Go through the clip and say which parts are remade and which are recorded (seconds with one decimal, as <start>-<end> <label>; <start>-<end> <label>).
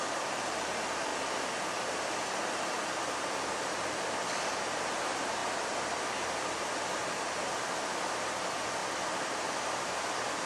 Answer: 0.0-10.5 recorded